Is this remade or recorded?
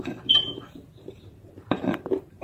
remade